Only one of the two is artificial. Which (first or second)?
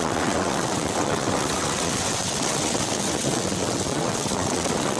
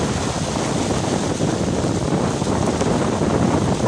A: first